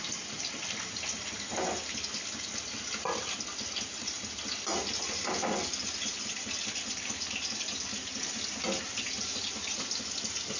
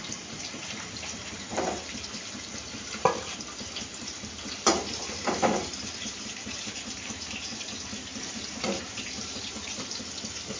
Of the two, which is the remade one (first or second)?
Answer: second